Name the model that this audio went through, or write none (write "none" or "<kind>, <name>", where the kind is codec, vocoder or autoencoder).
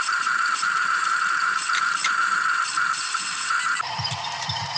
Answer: vocoder, BigVGAN v2